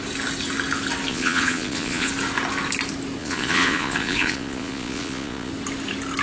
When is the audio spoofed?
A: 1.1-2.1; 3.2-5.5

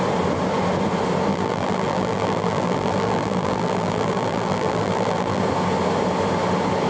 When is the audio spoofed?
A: 1.3-5.4

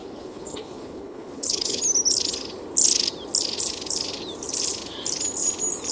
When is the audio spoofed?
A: 0.0-1.8

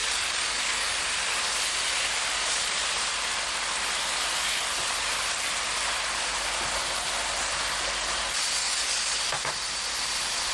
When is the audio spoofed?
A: 0.0-1.0; 8.6-9.3

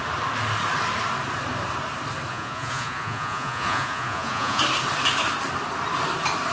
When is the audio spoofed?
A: 2.3-4.6